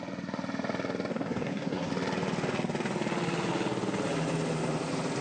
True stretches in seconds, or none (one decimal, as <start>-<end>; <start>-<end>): 0.0-1.1; 1.9-5.2